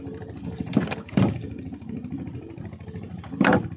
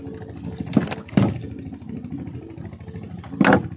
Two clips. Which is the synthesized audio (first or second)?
first